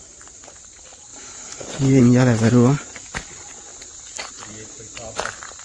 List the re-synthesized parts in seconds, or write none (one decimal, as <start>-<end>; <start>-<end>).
3.7-4.3